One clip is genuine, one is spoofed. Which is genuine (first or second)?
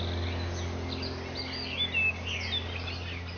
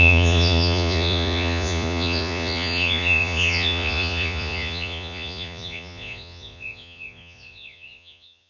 first